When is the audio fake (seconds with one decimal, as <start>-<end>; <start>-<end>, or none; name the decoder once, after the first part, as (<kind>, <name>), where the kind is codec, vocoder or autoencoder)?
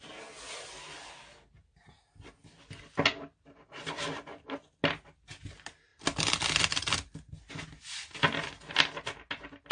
none